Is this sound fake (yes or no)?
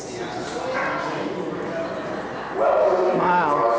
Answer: no